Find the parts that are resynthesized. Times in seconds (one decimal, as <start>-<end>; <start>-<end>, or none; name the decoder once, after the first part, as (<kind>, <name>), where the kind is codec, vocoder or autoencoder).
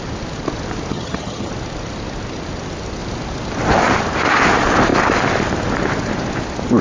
0.9-1.5 (vocoder, HiFi-GAN)